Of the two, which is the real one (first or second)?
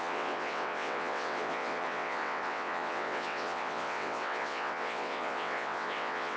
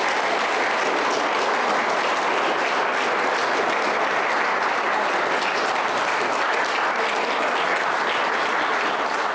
second